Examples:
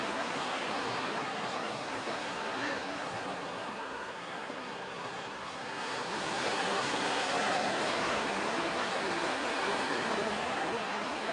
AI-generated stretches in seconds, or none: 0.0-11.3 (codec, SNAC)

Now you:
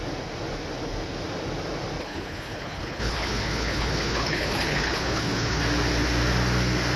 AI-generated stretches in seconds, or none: 2.0-5.6 (codec, HILCodec)

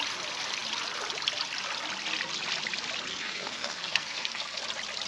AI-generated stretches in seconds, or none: 3.1-4.6 (codec, SNAC)

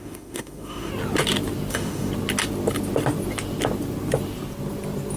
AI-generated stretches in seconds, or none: 0.0-0.9 (autoencoder, DAC-VAE); 1.7-2.1